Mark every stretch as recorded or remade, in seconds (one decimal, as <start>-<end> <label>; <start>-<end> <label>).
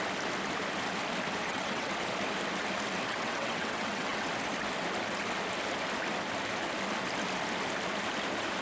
0.0-1.4 recorded; 1.4-1.9 remade; 1.9-3.1 recorded; 3.1-4.3 remade; 4.3-8.6 recorded